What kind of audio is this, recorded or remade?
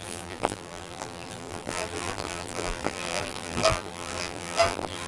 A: remade